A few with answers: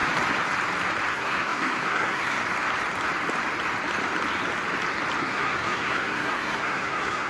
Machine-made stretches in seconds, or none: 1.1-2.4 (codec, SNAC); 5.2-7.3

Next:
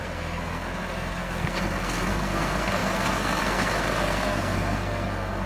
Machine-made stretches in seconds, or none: 0.0-5.5 (codec, SNAC)